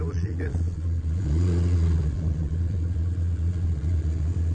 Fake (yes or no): yes